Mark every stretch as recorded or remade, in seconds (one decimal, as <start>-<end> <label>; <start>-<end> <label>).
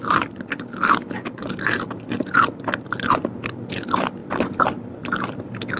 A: 0.0-5.8 recorded